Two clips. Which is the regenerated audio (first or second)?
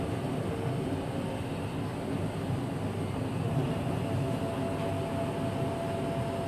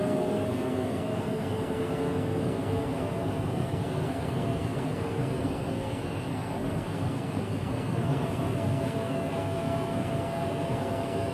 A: second